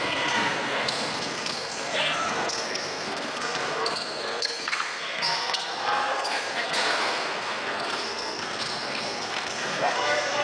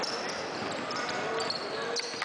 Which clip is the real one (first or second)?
second